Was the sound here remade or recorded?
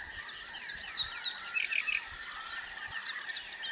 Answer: recorded